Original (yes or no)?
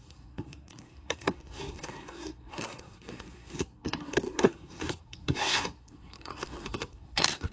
no